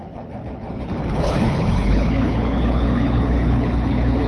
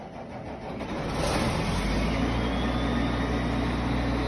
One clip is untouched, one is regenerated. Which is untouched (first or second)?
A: second